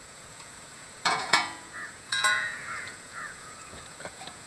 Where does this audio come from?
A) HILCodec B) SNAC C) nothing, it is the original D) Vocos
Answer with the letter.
D